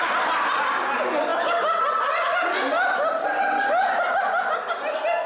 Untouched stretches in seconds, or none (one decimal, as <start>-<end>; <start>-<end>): 0.0-5.3